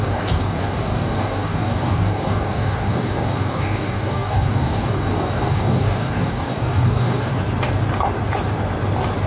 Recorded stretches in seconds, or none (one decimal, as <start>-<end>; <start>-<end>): 7.3-9.3